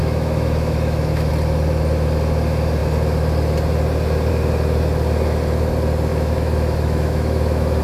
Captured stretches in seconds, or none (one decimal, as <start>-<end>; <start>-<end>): 1.3-6.1